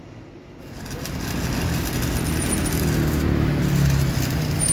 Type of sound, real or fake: real